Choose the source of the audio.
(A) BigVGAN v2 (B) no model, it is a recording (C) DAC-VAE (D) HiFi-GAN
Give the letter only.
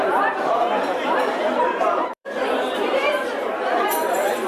A